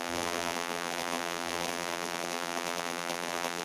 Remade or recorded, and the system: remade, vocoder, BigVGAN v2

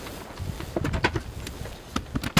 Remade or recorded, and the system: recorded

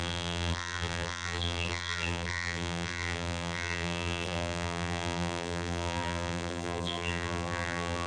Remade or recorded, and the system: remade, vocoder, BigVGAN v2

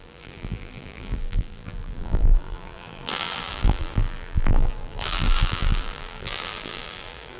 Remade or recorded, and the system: remade, vocoder, BigVGAN v2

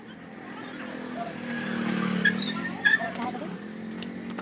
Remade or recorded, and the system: recorded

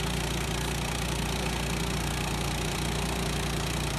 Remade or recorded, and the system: remade, vocoder, BigVGAN v2